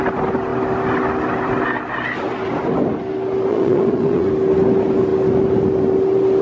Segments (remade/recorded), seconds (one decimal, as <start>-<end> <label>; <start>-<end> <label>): 0.0-3.5 recorded; 3.5-4.3 remade; 4.3-6.4 recorded